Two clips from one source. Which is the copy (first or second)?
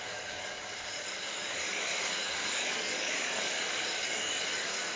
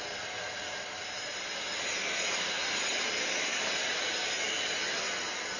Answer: first